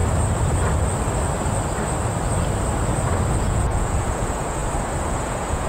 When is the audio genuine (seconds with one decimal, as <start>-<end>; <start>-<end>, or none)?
0.0-3.4; 4.6-5.1